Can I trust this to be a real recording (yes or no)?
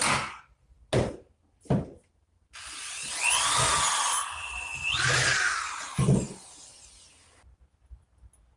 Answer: yes